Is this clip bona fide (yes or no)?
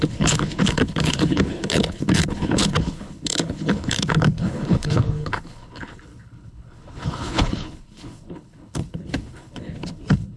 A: no